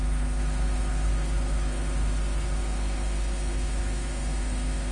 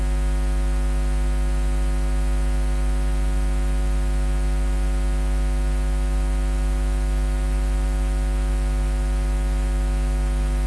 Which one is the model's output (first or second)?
first